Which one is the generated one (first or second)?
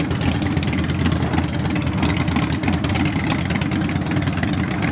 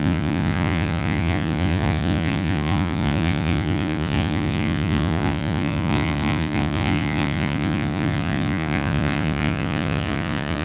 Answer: second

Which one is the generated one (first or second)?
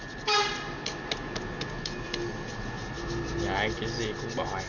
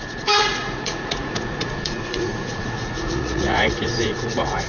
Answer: second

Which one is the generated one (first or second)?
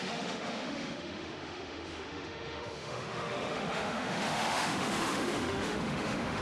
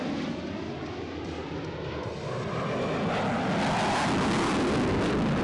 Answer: first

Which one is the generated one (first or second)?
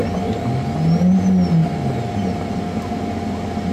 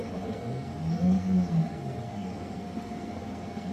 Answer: second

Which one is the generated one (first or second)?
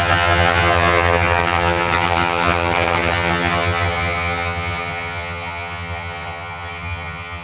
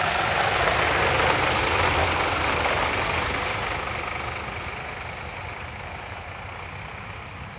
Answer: first